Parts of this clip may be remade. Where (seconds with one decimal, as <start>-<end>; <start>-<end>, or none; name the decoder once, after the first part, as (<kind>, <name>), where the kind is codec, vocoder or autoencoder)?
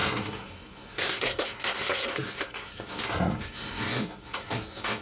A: 0.0-5.0 (codec, SNAC)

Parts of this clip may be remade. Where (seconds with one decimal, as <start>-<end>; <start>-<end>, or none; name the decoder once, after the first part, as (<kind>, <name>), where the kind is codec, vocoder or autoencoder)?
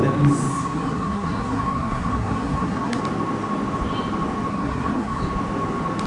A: 0.5-3.0 (codec, SNAC); 4.5-5.2